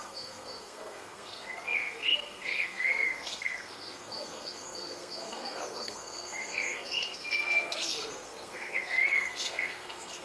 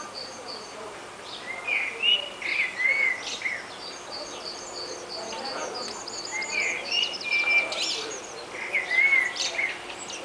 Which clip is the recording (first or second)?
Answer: second